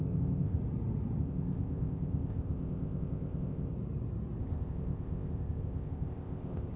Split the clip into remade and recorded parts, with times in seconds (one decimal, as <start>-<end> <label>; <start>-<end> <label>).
0.0-0.6 remade; 0.6-1.2 recorded; 1.2-3.7 remade; 3.7-4.4 recorded; 4.4-6.8 remade